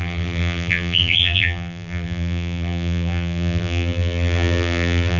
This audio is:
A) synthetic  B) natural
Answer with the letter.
A